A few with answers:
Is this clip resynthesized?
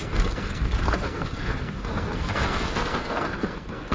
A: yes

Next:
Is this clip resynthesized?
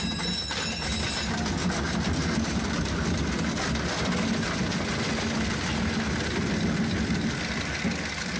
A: no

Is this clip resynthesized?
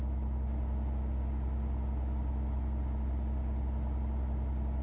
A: no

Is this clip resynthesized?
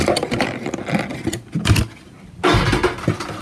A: no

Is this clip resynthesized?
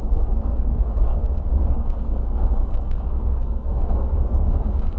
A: yes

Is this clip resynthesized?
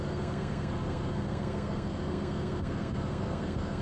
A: yes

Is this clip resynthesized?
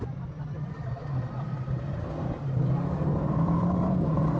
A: no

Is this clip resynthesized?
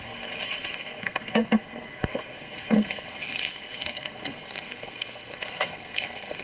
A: yes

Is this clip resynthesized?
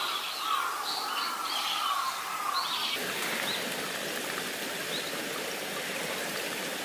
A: no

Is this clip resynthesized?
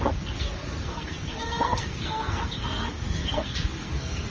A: yes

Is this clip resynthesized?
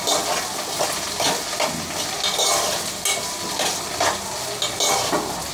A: no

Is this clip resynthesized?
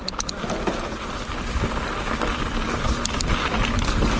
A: no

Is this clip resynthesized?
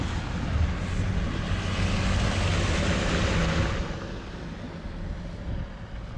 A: no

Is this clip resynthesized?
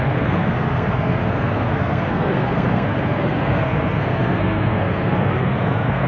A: yes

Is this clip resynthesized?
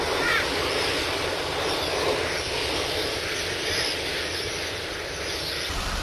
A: no